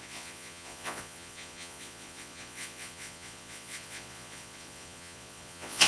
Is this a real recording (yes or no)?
no